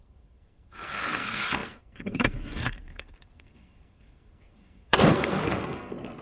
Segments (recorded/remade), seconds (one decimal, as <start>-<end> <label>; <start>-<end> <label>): 0.0-6.2 remade